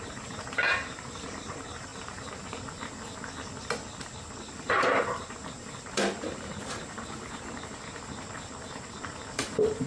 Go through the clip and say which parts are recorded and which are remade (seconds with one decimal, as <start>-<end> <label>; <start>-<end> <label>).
0.0-1.9 remade; 1.9-4.5 recorded; 4.5-9.9 remade